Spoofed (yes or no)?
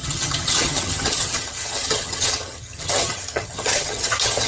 yes